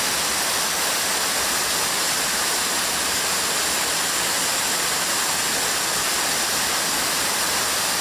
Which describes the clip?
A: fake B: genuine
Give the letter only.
B